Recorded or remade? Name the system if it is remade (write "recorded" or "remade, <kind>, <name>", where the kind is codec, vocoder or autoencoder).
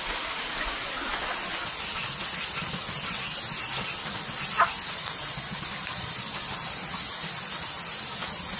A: remade, vocoder, BigVGAN v2